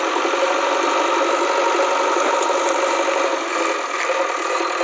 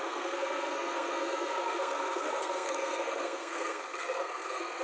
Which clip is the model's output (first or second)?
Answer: second